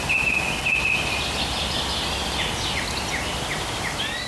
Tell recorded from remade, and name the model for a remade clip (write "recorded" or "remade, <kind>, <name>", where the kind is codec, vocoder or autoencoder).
recorded